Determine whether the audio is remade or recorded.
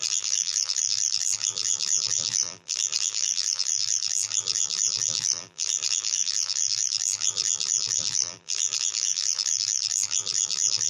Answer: remade